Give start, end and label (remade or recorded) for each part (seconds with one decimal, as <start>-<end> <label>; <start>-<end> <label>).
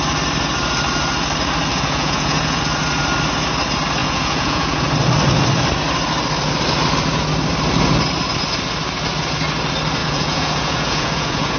0.0-1.7 recorded; 1.7-2.6 remade; 2.6-4.0 recorded; 4.0-4.9 remade; 4.9-10.0 recorded; 10.0-11.6 remade